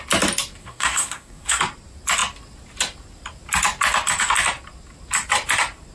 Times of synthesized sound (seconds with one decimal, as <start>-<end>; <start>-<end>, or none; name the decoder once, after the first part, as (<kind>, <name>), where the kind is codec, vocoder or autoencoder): 0.6-1.6 (codec, SNAC)